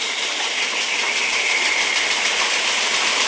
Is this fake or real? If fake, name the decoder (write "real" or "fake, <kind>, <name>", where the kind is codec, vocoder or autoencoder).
fake, vocoder, BigVGAN v2